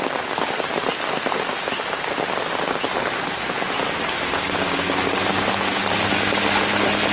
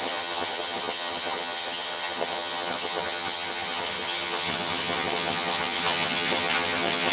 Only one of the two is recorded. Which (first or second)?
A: first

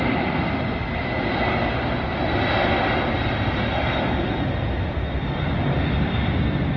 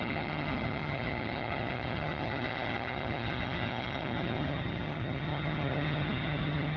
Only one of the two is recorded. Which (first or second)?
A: first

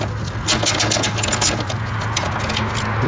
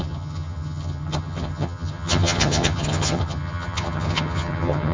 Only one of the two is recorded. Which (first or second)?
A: first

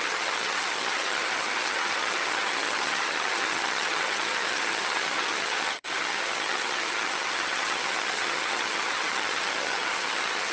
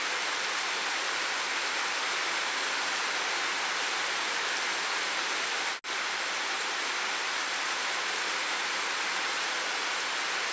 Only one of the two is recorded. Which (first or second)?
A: second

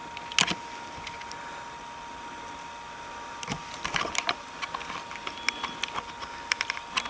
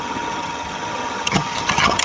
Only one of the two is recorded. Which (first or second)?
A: first